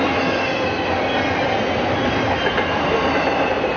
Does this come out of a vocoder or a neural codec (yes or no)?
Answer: no